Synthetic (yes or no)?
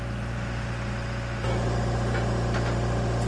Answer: no